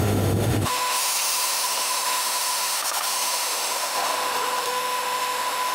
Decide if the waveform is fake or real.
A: fake